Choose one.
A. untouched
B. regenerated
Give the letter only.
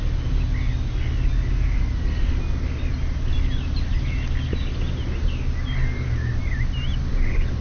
A